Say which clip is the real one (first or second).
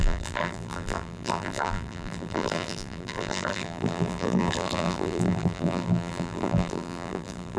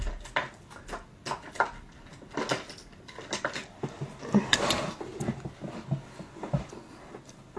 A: second